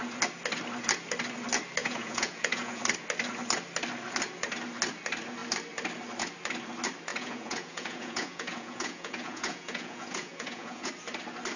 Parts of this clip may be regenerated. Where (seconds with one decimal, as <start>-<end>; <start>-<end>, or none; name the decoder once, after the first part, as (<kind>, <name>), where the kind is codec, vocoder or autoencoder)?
1.8-2.8 (vocoder, Vocos); 7.1-10.9